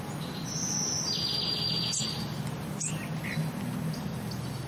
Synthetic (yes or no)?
no